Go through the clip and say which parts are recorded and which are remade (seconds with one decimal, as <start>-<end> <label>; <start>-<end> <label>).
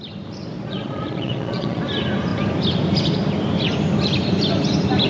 0.0-0.5 recorded; 0.5-1.8 remade; 1.8-5.1 recorded